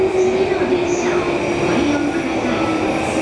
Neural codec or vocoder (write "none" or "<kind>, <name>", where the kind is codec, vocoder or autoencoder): none